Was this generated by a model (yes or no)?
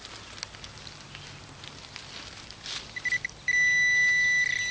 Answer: no